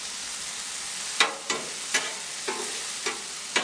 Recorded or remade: recorded